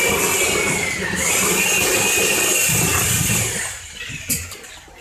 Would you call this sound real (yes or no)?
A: yes